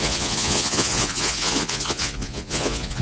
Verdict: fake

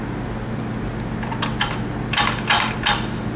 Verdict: real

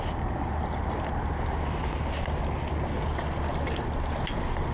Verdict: real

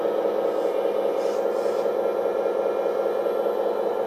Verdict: real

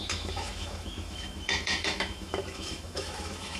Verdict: fake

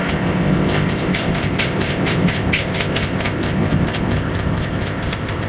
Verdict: fake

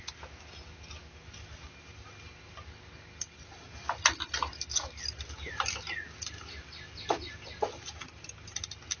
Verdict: real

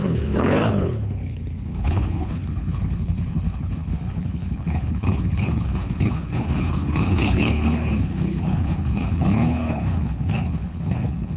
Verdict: fake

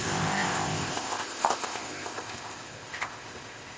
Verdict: fake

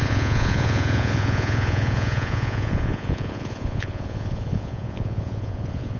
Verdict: fake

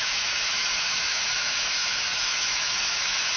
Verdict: fake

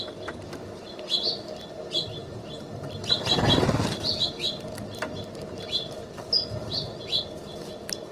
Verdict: real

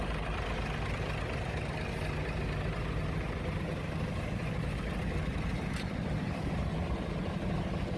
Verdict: real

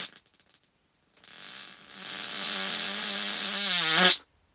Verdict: real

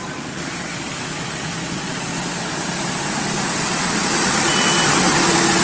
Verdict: real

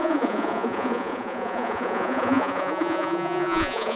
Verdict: fake